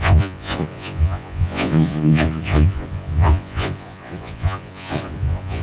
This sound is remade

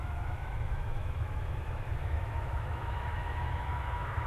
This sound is remade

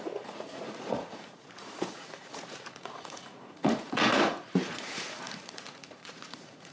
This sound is remade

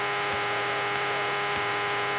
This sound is recorded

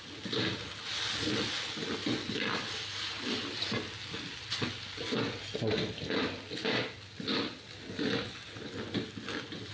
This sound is recorded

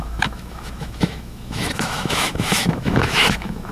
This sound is remade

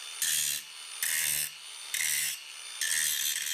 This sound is recorded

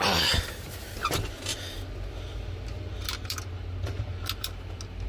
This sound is recorded